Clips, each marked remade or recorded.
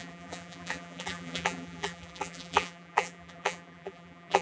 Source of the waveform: remade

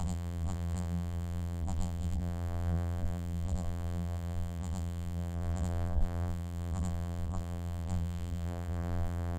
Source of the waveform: remade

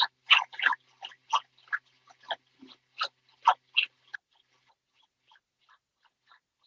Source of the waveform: recorded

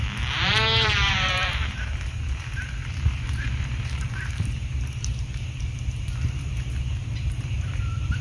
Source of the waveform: remade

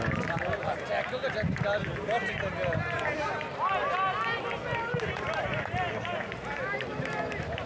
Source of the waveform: recorded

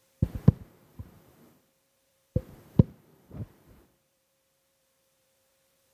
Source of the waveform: remade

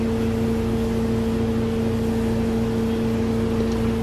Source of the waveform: recorded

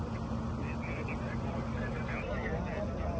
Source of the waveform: recorded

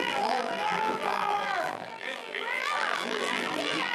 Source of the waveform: remade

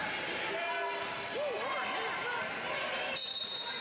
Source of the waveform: recorded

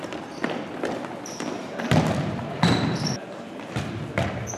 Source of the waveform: recorded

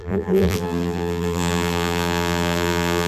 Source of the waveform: remade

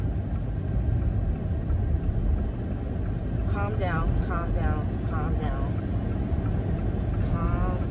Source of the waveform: recorded